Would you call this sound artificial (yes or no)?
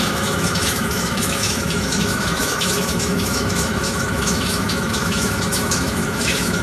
yes